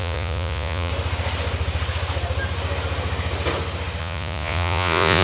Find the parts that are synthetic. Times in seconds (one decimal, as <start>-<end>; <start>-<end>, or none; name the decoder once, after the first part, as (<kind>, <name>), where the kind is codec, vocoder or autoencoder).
0.0-0.9 (vocoder, Vocos); 4.0-5.2